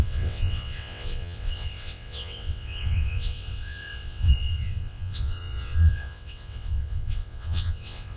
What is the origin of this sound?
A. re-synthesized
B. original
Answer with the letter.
A